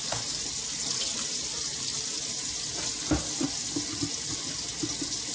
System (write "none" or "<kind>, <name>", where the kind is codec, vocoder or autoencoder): none